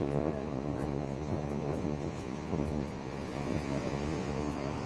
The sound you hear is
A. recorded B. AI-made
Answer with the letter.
B